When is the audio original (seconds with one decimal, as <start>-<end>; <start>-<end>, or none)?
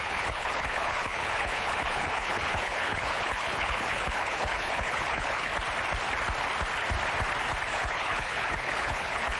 5.5-7.7